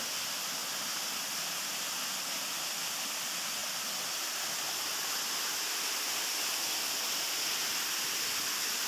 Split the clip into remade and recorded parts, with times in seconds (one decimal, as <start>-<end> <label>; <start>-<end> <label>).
0.0-8.9 recorded